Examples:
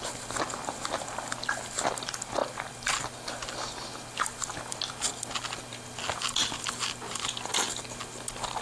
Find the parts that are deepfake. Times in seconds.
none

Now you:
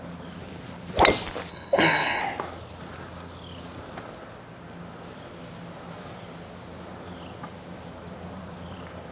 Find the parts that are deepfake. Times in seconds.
1.5-2.2 (codec, HILCodec)